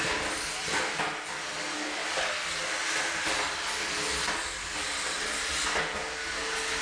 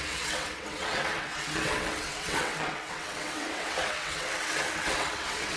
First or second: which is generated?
second